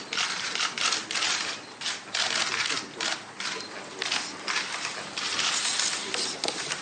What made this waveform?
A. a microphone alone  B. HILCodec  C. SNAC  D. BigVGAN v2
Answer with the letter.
A